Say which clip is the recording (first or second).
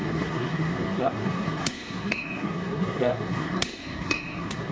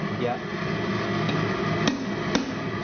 second